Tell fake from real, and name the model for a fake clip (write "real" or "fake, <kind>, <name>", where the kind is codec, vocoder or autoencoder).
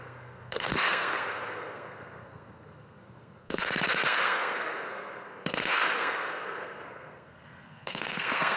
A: fake, codec, SNAC